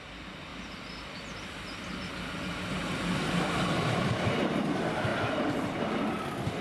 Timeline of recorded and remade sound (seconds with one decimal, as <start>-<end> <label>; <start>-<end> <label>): 0.0-6.6 recorded